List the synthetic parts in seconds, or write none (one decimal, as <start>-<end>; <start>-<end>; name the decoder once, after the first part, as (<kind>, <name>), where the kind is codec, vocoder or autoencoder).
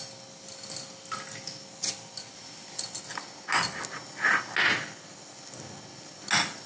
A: none